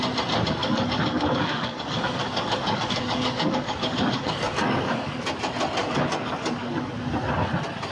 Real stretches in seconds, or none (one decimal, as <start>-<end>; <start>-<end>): 0.0-0.6; 5.2-5.8; 6.9-7.9